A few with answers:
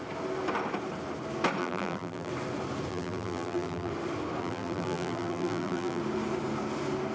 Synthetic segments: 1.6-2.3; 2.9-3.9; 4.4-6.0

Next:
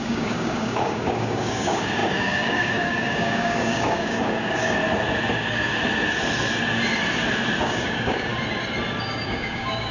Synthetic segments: 0.0-4.8; 5.3-5.7; 7.6-8.3; 9.0-9.9

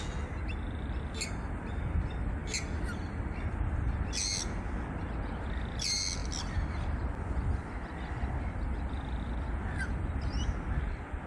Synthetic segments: none

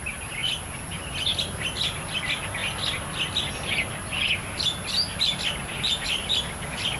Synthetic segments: none